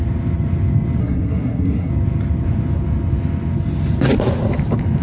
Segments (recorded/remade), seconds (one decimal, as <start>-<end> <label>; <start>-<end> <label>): 0.0-1.0 recorded; 1.0-1.9 remade; 1.9-5.0 recorded

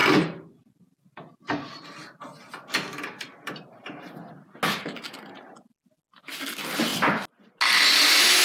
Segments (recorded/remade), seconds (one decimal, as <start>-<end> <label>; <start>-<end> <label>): 0.0-8.4 recorded

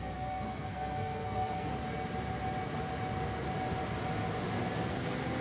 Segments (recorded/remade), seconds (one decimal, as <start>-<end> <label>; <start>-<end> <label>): 0.0-1.7 remade; 1.7-4.9 recorded; 4.9-5.4 remade

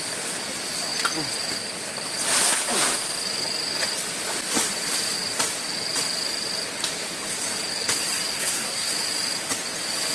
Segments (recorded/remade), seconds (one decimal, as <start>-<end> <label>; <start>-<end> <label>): 0.0-8.3 recorded; 8.3-8.9 remade; 8.9-10.1 recorded

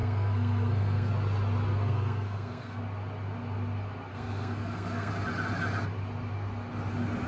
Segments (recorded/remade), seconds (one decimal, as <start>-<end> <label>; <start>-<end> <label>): 0.0-1.1 remade; 1.1-1.7 recorded; 1.7-2.8 remade; 2.8-4.1 recorded; 4.1-5.1 remade; 5.1-7.3 recorded

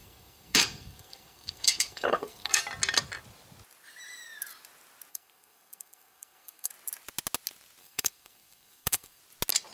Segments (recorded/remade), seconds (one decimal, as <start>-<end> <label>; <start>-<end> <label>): 0.0-2.6 remade; 2.6-5.1 recorded; 5.1-6.7 remade; 6.7-7.8 recorded; 7.8-9.2 remade; 9.2-9.7 recorded

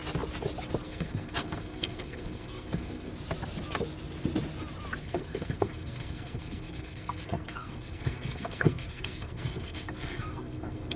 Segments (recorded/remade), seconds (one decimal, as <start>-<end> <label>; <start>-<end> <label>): 0.0-0.8 recorded; 0.8-3.1 remade; 3.1-5.0 recorded; 5.0-11.0 remade